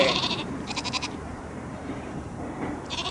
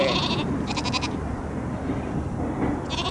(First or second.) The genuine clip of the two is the second